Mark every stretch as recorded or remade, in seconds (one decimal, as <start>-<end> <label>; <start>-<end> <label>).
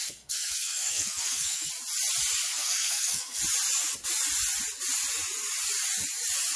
0.0-1.7 remade; 1.7-2.5 recorded; 2.5-3.4 remade; 3.4-6.6 recorded